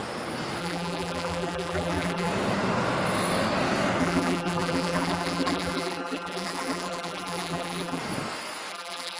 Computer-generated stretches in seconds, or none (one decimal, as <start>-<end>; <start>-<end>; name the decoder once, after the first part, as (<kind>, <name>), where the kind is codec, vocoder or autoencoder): 0.6-2.3 (vocoder, BigVGAN v2); 4.0-8.0; 8.7-9.2

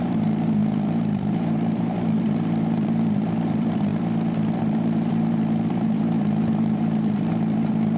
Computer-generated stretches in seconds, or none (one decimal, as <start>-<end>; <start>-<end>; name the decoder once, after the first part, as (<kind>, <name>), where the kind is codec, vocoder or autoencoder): 0.0-3.9 (vocoder, BigVGAN v2); 4.6-8.0

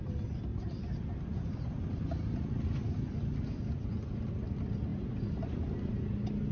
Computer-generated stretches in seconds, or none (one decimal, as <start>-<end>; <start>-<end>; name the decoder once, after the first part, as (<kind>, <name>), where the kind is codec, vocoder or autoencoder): 0.5-1.8 (vocoder, BigVGAN v2); 4.9-5.9

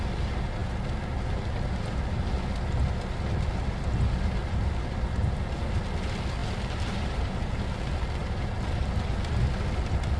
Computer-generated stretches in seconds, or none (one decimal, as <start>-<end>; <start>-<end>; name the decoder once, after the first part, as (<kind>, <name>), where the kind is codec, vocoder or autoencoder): 6.4-7.3 (vocoder, BigVGAN v2); 8.2-8.8

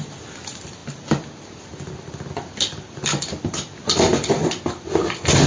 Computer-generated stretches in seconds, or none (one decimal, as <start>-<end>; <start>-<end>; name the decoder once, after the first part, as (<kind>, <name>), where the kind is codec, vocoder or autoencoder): none

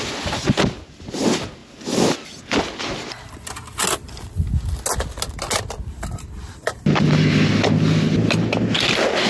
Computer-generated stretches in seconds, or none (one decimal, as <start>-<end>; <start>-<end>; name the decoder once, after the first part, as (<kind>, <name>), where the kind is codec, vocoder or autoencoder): none

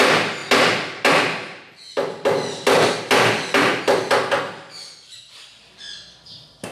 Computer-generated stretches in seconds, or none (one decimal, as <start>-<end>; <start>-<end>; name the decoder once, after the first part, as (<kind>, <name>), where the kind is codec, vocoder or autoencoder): none